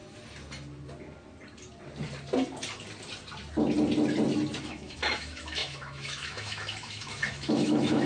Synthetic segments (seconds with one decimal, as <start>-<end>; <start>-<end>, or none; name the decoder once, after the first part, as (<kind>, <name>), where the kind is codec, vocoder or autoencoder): 4.6-8.1 (autoencoder, DAC-VAE)

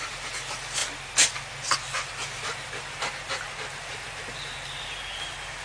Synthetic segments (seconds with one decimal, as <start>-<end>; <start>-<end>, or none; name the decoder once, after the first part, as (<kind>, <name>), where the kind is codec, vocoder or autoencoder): none

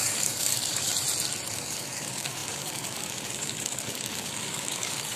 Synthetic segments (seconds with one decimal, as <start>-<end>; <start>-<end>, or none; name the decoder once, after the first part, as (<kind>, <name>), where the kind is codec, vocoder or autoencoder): 0.0-0.9 (codec, DAC); 1.5-5.2

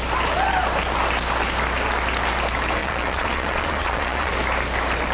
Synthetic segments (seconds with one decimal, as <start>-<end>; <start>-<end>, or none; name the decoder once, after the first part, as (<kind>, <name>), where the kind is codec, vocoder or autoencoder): 2.8-4.3 (vocoder, Vocos)

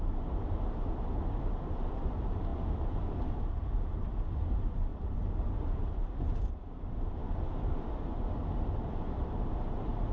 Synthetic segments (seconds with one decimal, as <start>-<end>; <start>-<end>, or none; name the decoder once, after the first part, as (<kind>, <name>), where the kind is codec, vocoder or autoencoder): 0.0-8.1 (vocoder, BigVGAN v2); 9.0-10.1

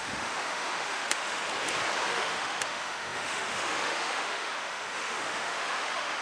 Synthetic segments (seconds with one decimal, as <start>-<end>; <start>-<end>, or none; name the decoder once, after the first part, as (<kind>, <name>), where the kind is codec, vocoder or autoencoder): 0.0-1.4 (autoencoder, DAC-VAE); 2.1-6.2

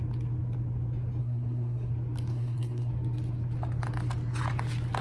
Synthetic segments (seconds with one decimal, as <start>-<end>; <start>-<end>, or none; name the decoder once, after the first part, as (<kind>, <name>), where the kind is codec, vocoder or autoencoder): 1.2-1.9 (codec, SNAC); 2.3-2.9

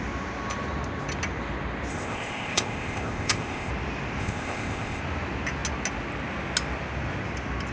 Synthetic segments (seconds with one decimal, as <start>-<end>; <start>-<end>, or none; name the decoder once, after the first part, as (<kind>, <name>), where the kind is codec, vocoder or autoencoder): 1.9-3.7 (codec, ZipCodec); 4.2-5.0